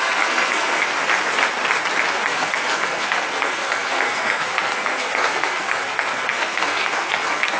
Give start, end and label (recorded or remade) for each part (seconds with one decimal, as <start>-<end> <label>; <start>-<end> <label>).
0.0-0.9 remade; 0.9-2.1 recorded; 2.1-7.6 remade